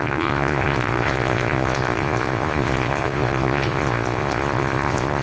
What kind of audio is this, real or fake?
fake